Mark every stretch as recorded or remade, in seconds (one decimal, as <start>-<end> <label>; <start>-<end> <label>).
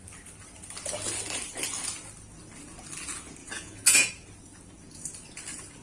0.0-3.4 recorded; 3.4-4.1 remade; 4.1-5.8 recorded